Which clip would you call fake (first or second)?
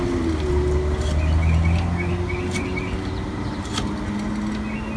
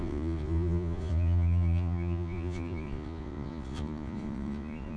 second